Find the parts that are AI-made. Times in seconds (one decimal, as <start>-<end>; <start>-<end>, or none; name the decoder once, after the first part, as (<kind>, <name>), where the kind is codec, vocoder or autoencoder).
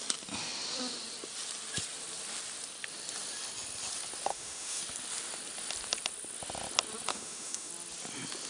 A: 4.3-4.8 (autoencoder, DAC-VAE); 7.1-7.7